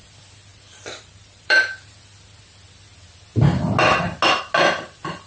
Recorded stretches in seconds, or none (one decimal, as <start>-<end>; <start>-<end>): 0.0-0.5; 1.9-5.3

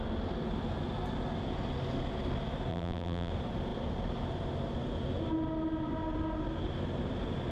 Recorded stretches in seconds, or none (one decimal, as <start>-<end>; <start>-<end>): 0.0-2.7; 3.3-7.5

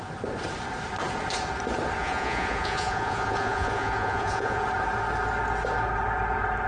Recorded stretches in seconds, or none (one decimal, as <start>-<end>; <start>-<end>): 0.0-2.0; 4.6-6.7

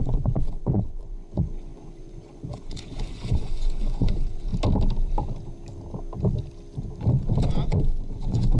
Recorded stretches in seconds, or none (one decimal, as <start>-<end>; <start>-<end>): 4.5-7.4

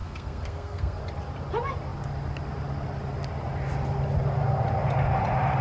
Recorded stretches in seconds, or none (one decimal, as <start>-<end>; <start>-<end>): 1.0-5.6

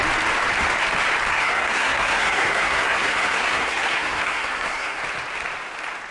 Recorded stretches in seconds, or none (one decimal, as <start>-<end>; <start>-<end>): 0.0-1.3; 5.0-6.1

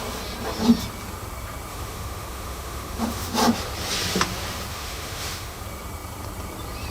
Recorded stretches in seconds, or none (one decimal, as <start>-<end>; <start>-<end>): 0.0-1.7; 3.4-4.7; 5.6-6.9

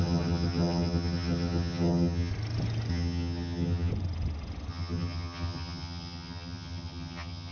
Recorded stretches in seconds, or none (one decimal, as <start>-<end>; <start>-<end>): 2.3-2.9; 3.9-4.7